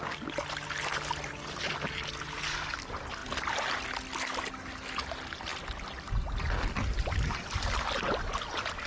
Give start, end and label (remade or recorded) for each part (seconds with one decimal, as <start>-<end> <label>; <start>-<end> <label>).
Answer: 0.0-8.9 recorded